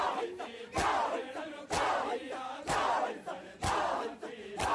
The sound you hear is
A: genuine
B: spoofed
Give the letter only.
A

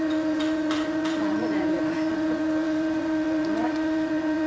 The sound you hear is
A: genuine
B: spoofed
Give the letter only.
B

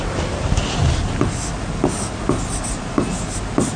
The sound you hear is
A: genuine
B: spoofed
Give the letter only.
A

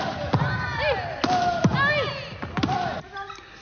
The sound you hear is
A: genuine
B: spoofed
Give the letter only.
A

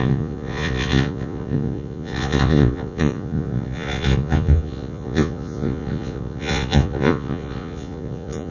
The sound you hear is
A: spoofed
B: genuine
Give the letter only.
A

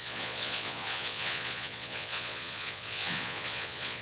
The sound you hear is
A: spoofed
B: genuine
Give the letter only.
A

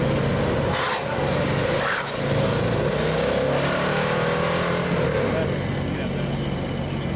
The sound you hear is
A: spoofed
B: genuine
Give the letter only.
B